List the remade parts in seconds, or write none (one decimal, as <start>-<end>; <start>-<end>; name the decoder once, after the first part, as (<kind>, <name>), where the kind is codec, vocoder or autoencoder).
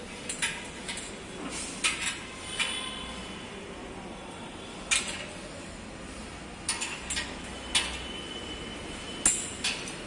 none